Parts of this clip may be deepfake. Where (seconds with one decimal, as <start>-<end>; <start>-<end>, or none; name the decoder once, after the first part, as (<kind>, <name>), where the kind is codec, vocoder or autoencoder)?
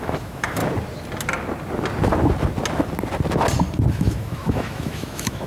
0.0-0.6 (autoencoder, DAC-VAE); 3.9-5.5